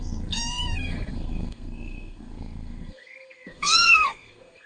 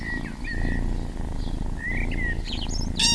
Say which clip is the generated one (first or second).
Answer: first